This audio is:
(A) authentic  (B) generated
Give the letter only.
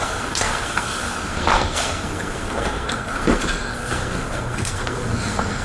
B